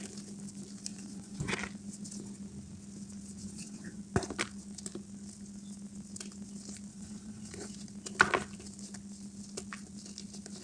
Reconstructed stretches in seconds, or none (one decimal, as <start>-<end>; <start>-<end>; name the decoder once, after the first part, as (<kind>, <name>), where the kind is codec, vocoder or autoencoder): 0.9-1.5 (vocoder, Vocos); 3.4-4.0; 6.9-7.7